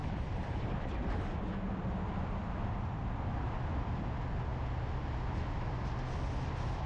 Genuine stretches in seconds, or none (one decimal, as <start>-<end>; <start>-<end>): 4.1-6.9

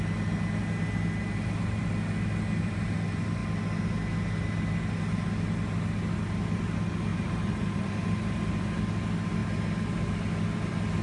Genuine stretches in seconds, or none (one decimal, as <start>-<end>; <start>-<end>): 0.0-1.2; 1.9-7.1; 8.7-11.0

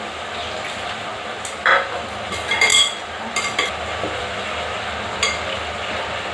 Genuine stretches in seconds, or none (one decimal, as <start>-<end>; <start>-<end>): 0.0-6.3

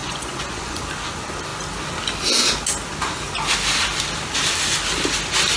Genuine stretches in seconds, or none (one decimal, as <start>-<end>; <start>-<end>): 0.8-5.6